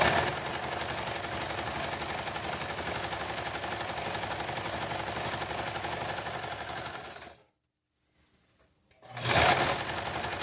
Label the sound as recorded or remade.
recorded